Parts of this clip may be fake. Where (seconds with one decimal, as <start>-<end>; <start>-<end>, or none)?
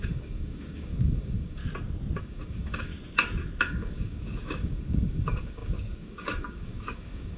0.0-1.6; 2.2-2.9; 3.6-7.4